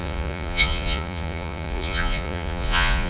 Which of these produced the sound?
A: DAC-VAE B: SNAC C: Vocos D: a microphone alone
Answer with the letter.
C